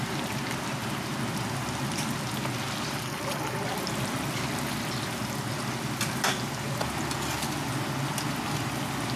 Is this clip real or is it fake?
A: real